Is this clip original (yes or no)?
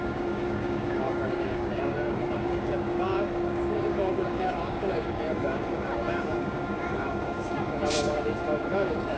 no